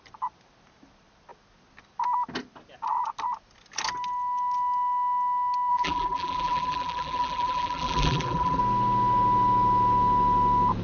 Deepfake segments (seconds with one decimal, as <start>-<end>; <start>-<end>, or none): 5.7-8.6